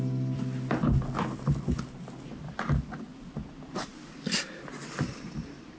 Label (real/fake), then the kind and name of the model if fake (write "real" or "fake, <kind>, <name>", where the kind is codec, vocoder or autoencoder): real